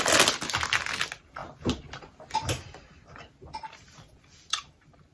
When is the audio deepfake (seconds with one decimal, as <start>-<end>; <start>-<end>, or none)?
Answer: none